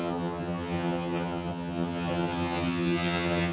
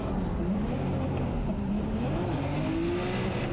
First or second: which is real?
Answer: second